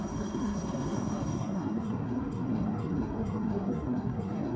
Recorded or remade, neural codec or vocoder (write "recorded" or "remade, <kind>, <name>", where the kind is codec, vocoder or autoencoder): remade, codec, SNAC